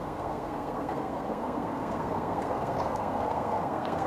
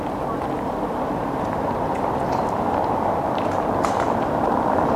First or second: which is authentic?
second